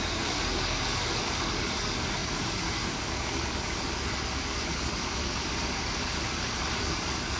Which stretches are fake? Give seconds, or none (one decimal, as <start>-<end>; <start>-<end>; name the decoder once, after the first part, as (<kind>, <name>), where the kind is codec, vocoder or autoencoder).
0.0-7.4 (codec, DAC)